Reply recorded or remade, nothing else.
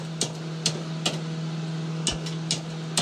recorded